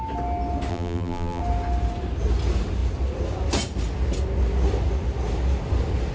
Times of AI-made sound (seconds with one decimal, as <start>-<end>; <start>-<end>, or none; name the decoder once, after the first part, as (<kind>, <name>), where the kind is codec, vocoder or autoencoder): 0.7-1.4 (vocoder, BigVGAN v2)